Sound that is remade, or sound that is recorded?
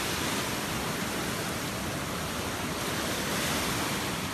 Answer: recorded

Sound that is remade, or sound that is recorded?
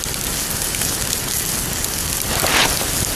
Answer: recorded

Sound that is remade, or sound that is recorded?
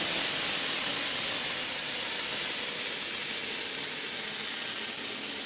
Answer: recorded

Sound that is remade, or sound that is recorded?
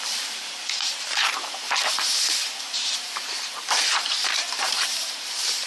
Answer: remade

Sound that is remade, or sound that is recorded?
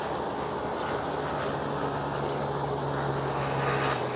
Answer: recorded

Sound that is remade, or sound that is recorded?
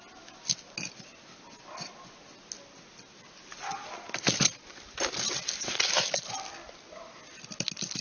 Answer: recorded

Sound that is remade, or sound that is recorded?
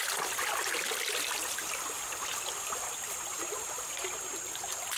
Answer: recorded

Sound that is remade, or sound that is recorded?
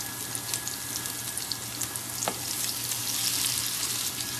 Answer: recorded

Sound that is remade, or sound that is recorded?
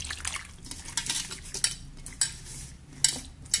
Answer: recorded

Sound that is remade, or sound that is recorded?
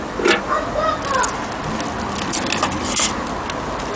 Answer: recorded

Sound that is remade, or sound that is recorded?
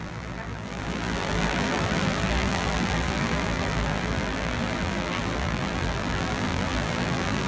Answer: remade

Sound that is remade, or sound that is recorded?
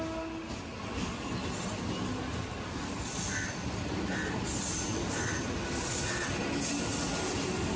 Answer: recorded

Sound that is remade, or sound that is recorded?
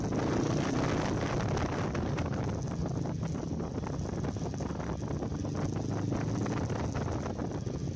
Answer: recorded